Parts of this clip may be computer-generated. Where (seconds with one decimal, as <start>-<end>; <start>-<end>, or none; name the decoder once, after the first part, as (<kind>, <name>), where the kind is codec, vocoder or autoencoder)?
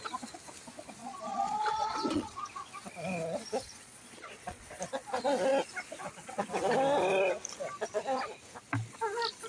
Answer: 1.0-2.7 (vocoder, Vocos); 3.6-4.8